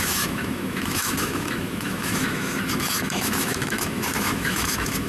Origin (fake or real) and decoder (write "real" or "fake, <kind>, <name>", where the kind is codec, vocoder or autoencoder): fake, autoencoder, DAC-VAE